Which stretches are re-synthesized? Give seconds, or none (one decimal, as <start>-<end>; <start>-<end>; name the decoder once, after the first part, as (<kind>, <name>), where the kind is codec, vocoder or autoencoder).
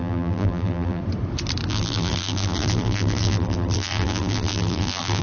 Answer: 0.0-1.0 (vocoder, BigVGAN v2); 1.7-5.2